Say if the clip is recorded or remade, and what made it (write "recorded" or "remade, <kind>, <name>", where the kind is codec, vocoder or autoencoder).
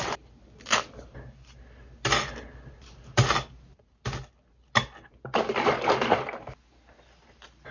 recorded